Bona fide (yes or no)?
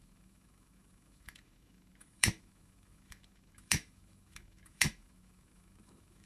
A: no